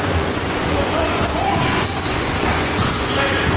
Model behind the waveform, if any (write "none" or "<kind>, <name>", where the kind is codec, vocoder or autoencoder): vocoder, Vocos